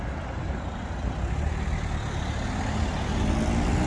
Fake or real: real